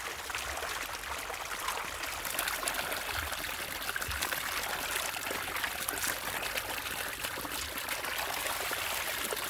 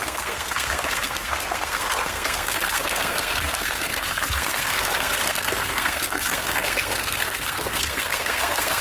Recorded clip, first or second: first